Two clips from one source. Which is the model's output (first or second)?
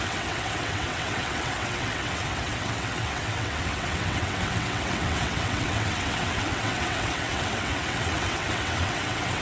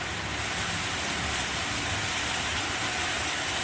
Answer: first